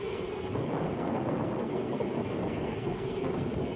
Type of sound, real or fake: fake